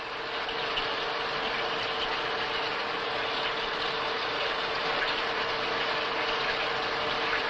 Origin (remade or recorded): recorded